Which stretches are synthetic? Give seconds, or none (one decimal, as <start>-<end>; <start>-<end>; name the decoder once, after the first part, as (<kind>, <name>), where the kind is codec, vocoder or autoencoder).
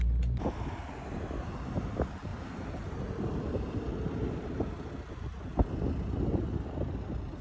2.3-4.6 (vocoder, BigVGAN v2)